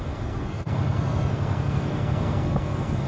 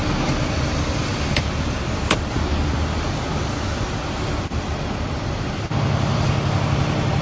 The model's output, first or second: first